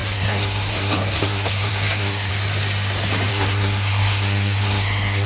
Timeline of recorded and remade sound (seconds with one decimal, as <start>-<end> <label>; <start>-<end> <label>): 0.0-2.3 remade; 2.3-3.3 recorded; 3.3-5.3 remade